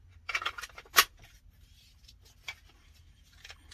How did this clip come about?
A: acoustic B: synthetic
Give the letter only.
B